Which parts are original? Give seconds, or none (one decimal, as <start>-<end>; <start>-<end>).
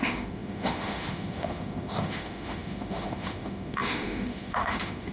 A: none